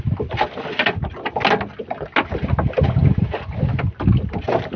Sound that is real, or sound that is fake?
real